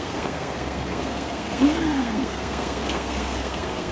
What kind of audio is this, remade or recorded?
remade